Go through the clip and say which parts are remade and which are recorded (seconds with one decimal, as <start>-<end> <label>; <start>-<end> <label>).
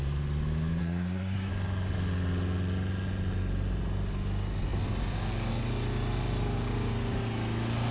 0.0-0.8 recorded; 0.8-1.5 remade; 1.5-7.9 recorded